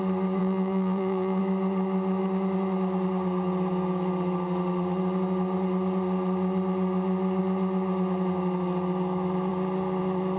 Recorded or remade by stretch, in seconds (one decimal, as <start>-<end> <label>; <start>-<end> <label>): 0.0-0.4 recorded; 0.4-1.4 remade; 1.4-10.4 recorded